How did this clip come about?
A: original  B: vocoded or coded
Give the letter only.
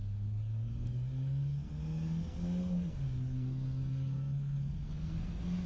B